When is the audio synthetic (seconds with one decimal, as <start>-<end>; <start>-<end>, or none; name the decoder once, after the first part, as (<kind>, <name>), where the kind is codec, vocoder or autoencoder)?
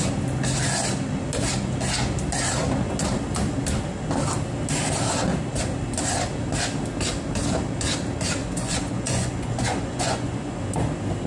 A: 8.4-10.6 (vocoder, Vocos)